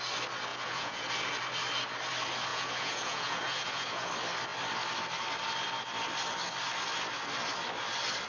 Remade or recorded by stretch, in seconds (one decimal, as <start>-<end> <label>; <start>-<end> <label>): 0.0-0.5 recorded; 0.5-1.1 remade; 1.1-2.5 recorded; 2.5-4.1 remade; 4.1-8.3 recorded